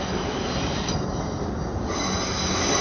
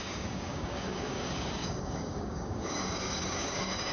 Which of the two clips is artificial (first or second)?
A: second